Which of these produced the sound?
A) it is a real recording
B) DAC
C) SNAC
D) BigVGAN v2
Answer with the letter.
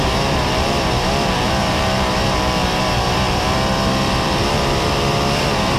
D